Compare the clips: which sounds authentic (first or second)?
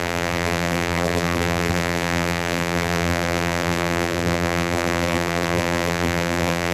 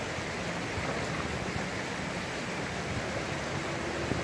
second